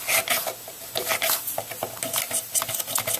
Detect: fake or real real